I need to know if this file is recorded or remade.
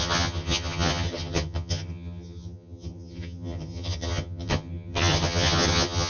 remade